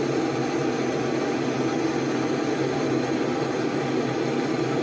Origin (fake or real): real